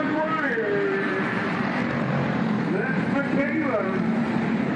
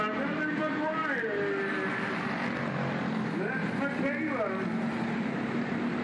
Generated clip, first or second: first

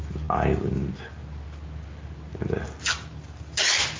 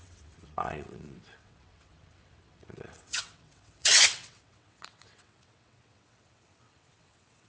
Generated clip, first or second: second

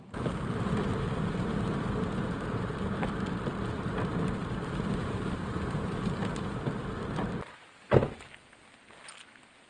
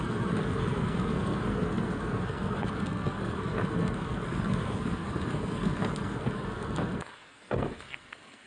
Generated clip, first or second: second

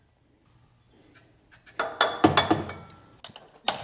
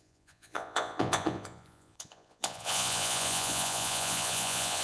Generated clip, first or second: second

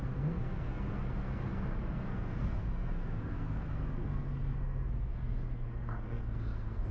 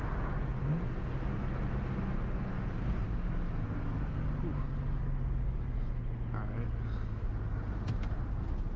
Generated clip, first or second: first